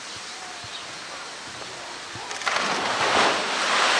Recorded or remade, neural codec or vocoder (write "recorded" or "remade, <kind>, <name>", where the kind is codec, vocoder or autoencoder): recorded